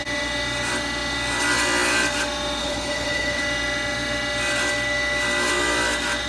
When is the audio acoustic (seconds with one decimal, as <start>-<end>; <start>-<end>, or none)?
0.0-2.6; 3.4-6.3